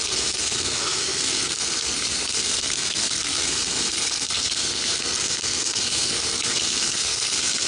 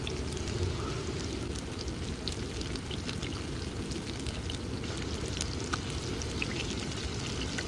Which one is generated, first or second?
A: first